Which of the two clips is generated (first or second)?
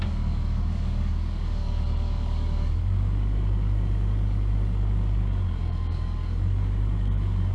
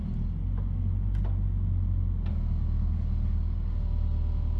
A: first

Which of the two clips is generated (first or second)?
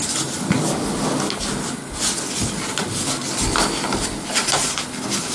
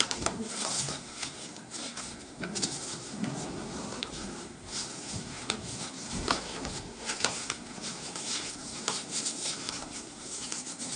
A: second